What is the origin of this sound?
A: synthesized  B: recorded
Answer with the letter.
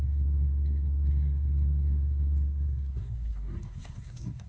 A